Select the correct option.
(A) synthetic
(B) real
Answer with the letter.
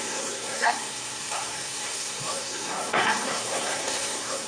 A